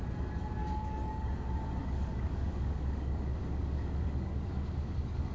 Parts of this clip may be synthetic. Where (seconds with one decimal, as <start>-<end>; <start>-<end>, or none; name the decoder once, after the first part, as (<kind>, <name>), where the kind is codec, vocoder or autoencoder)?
0.6-1.3 (codec, DAC); 1.8-5.3